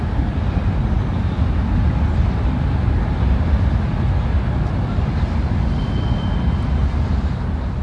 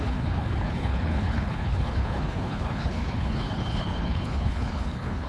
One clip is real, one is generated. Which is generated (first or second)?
second